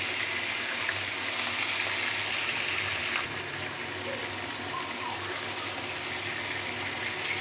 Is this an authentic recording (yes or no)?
yes